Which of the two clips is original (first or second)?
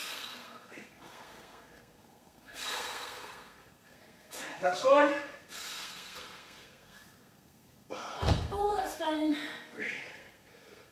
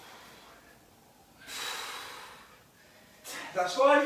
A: second